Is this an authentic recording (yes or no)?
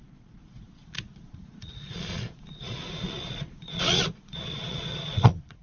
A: no